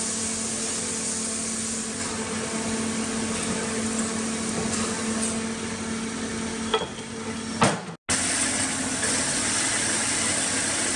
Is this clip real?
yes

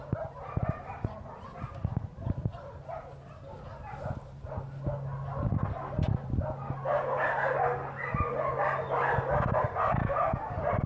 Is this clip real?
yes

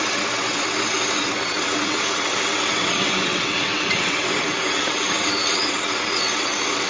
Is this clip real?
no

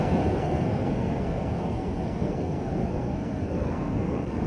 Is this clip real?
no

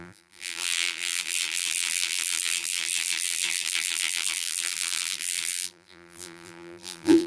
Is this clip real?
no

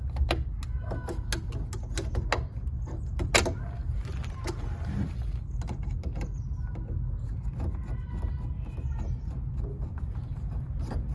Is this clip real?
yes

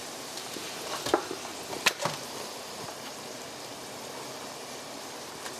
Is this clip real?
no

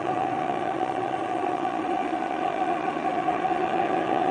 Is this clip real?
no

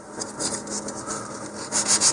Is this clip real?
yes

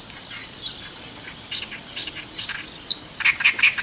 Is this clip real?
yes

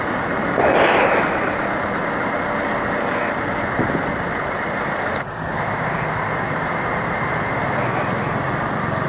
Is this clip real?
yes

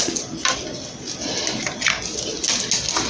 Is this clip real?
yes